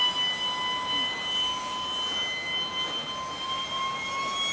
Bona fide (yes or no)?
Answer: yes